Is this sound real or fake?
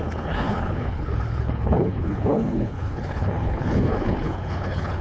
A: fake